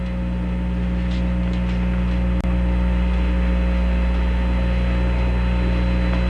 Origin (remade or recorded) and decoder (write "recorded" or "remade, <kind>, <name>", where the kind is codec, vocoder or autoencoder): recorded